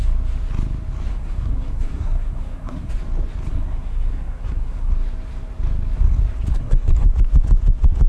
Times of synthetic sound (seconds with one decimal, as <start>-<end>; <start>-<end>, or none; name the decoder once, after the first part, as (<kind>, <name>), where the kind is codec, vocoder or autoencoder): 1.1-2.9 (codec, SNAC); 3.5-4.9; 6.5-7.1